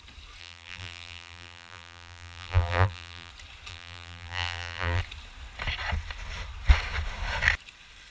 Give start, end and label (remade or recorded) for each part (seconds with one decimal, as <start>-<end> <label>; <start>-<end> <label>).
0.0-0.4 recorded; 0.4-3.3 remade; 3.3-3.7 recorded; 3.7-5.0 remade; 5.0-8.1 recorded